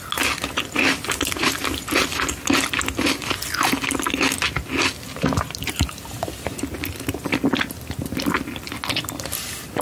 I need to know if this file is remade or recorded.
recorded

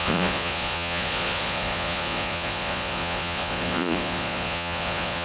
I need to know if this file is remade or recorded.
remade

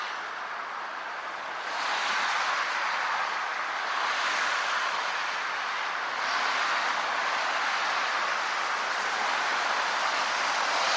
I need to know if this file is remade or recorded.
recorded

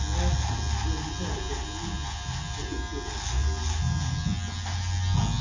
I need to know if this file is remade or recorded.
recorded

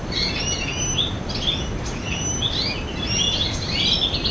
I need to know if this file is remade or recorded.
recorded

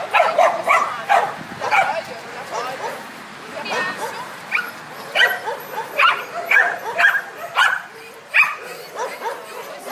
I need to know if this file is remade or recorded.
recorded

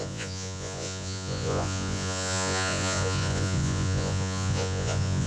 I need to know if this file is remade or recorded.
remade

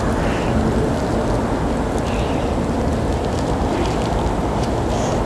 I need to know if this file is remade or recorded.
recorded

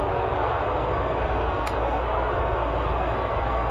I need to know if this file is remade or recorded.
remade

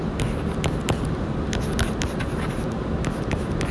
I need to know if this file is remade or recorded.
recorded